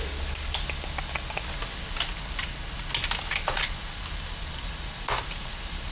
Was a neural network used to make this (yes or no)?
no